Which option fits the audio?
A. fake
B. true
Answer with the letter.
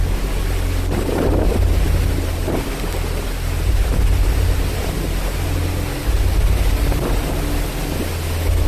B